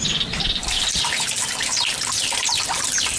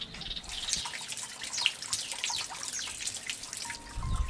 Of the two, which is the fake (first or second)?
first